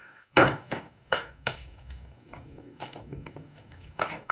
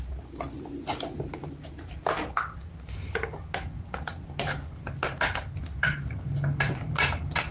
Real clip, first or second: second